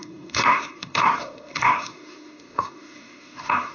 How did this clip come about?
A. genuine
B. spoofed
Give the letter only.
B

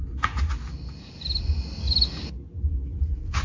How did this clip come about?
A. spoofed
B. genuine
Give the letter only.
B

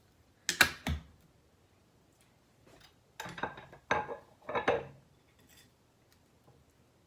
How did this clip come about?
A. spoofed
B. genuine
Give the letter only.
B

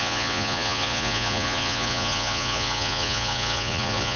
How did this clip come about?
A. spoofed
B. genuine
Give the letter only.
A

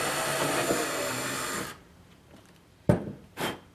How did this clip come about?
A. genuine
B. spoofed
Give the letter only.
A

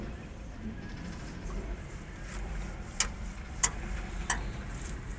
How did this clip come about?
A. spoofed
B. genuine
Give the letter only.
B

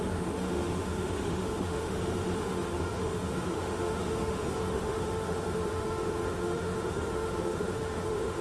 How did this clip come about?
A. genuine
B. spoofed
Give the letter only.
B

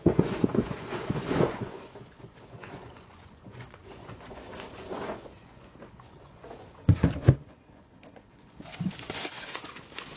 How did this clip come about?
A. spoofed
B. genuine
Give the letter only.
A